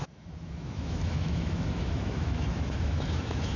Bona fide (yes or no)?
no